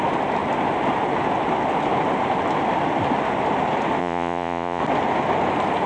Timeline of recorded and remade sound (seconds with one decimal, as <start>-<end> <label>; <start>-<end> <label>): 0.0-4.0 recorded; 4.0-4.8 remade; 4.8-5.9 recorded